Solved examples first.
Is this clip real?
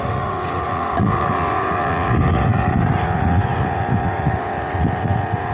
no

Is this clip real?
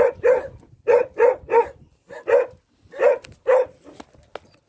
yes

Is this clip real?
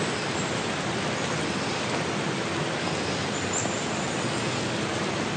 yes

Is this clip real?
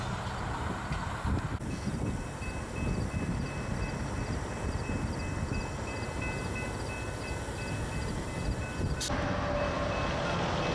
yes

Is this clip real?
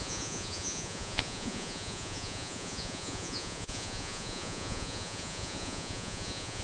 no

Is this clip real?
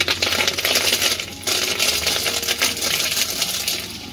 yes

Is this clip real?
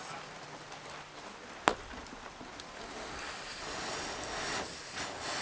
yes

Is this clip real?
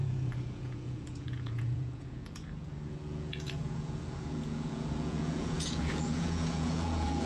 no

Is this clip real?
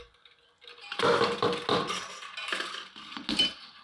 yes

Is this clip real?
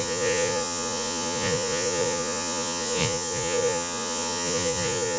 no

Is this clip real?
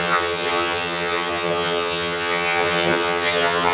no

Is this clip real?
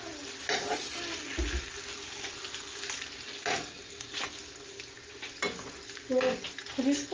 yes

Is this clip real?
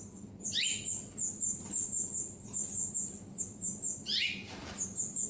yes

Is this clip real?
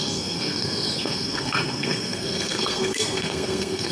no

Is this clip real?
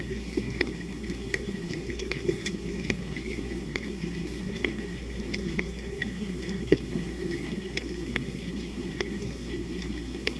no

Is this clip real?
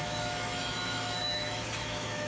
no